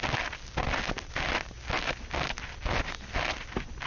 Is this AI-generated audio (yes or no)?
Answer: no